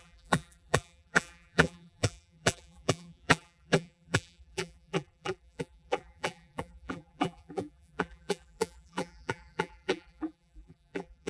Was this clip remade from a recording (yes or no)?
yes